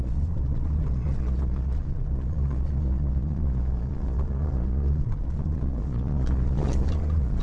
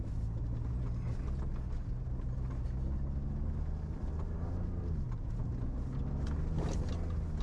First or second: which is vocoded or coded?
first